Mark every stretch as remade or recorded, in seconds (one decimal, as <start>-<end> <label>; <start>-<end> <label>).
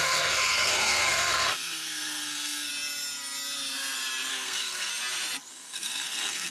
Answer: 0.0-2.7 remade; 2.7-4.3 recorded; 4.3-4.9 remade; 4.9-5.5 recorded; 5.5-6.5 remade